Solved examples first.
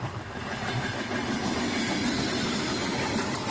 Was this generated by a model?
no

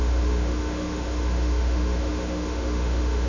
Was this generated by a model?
yes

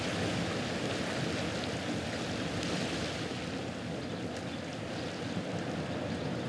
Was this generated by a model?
no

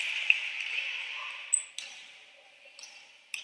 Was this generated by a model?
no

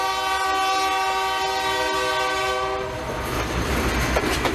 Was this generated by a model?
no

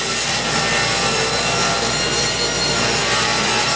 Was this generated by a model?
no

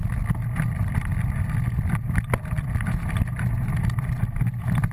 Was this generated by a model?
no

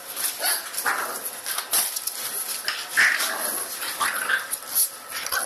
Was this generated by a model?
no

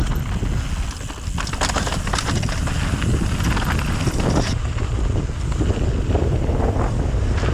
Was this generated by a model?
no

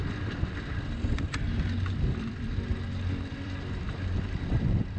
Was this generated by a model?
yes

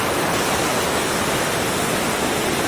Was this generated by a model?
no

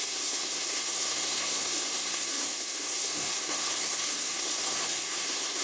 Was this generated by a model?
yes